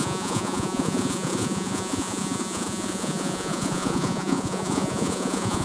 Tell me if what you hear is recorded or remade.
remade